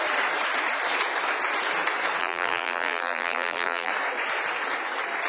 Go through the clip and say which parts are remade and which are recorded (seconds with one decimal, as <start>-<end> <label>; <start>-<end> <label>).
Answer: 0.0-2.2 recorded; 2.2-3.9 remade; 3.9-5.3 recorded